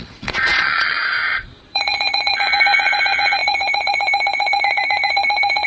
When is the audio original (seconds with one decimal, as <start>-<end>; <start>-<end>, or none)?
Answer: none